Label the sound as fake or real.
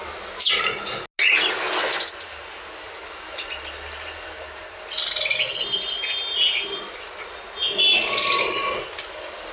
real